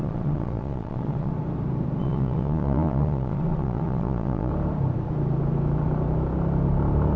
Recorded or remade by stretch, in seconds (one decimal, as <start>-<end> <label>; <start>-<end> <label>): 0.0-1.3 remade; 1.3-2.0 recorded; 2.0-4.5 remade; 4.5-7.2 recorded